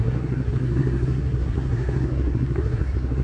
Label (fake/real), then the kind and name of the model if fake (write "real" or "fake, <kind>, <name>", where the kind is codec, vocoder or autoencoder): fake, codec, SNAC